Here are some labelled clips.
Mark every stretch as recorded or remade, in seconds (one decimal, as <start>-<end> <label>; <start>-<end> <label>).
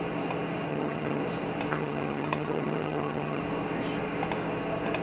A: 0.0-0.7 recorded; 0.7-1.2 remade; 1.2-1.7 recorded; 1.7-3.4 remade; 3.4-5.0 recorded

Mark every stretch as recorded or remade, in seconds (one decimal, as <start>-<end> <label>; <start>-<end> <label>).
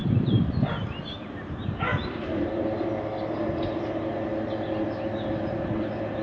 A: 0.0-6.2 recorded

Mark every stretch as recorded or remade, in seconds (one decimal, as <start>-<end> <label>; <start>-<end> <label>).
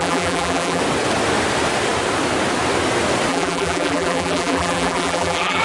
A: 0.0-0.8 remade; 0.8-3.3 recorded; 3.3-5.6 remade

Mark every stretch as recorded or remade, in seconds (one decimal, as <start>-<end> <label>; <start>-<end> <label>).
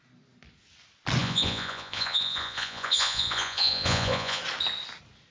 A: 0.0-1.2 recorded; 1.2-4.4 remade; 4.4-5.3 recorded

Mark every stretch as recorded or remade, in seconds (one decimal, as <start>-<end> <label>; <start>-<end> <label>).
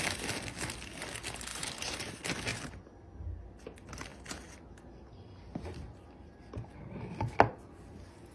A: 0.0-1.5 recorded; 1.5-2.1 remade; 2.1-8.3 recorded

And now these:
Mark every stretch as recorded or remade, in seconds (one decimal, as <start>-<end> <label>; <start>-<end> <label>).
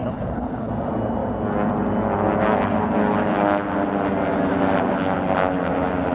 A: 0.0-0.7 remade; 0.7-6.1 recorded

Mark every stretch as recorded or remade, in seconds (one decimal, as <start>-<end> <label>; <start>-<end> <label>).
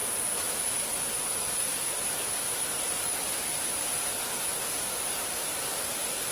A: 0.0-0.5 remade; 0.5-1.7 recorded; 1.7-4.0 remade; 4.0-6.3 recorded